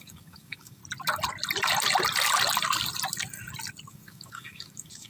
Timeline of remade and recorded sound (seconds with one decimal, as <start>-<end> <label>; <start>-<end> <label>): 0.0-0.8 remade; 0.8-3.9 recorded; 3.9-5.1 remade